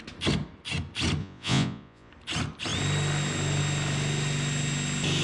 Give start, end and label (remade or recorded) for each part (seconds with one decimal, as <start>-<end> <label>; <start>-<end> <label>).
0.0-1.2 recorded; 1.2-2.1 remade; 2.1-5.2 recorded